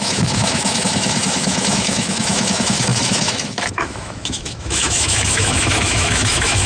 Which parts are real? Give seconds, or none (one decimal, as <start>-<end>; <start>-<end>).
none